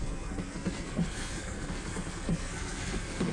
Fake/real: fake